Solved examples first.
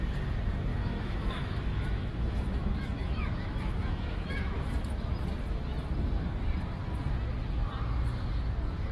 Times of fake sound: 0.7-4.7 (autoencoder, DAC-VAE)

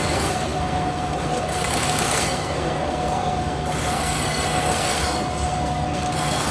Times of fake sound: 0.0-6.5 (codec, SNAC)